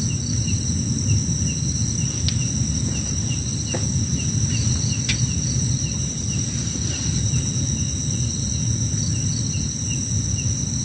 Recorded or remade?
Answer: recorded